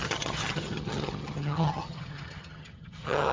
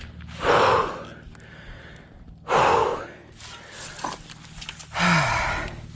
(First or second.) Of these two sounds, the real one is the second